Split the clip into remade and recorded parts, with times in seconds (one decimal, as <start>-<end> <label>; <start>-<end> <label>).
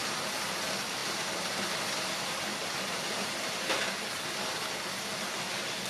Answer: 0.0-1.0 recorded; 1.0-3.7 remade; 3.7-5.9 recorded